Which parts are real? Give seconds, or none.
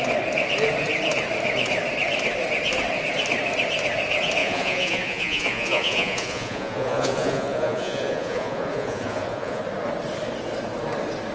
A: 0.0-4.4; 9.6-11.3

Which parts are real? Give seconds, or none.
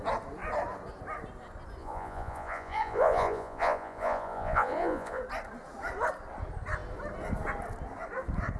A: 0.0-1.8; 5.2-8.6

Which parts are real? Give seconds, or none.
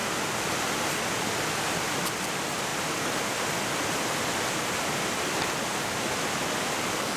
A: 0.0-7.2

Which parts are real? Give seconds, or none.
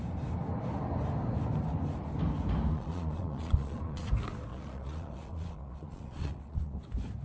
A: 0.0-2.7; 4.1-4.5; 6.8-7.2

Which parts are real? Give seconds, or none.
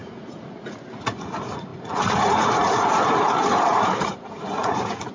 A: none